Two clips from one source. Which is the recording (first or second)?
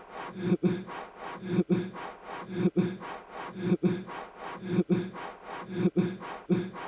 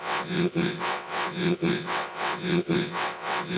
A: first